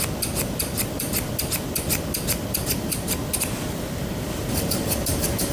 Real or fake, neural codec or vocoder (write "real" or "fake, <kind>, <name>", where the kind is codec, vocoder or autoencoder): real